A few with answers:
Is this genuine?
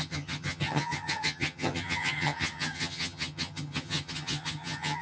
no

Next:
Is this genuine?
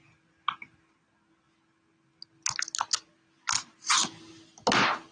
yes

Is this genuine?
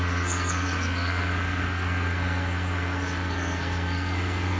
no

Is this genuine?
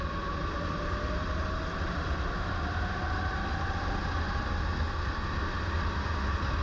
yes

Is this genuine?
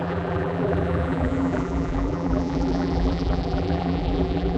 no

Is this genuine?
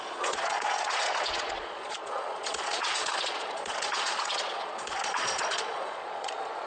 no